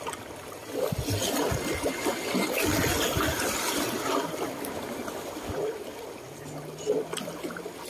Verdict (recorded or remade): recorded